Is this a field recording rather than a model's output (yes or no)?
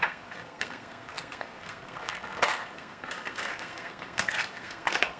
no